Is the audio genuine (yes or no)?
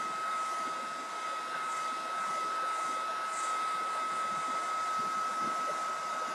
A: yes